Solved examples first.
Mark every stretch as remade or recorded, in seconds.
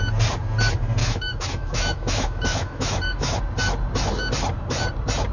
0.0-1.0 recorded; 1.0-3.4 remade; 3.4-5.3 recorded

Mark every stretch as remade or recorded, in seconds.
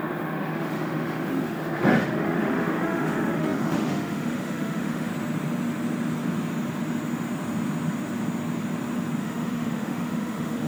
0.0-5.1 remade; 5.1-9.2 recorded; 9.2-10.7 remade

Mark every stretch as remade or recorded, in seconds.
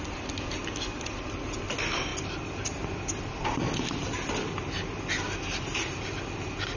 0.0-6.8 recorded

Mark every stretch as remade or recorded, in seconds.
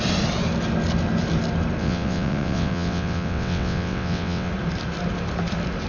0.0-1.8 recorded; 1.8-4.5 remade; 4.5-5.9 recorded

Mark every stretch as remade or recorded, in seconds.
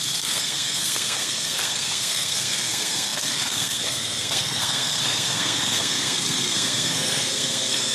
0.0-7.9 remade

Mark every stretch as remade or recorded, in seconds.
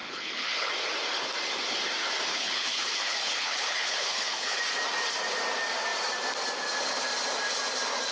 0.0-0.7 remade; 0.7-2.3 recorded; 2.3-4.6 remade; 4.6-8.1 recorded